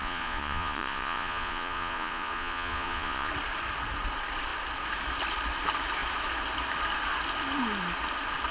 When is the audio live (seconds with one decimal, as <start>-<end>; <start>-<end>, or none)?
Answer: 3.3-8.5